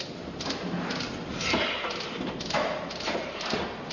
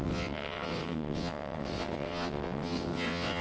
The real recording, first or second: first